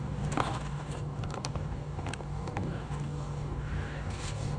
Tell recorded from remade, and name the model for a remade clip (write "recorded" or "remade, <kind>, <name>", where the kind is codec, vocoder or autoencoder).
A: remade, codec, DAC